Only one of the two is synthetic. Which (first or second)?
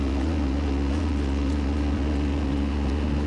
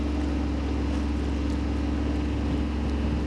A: first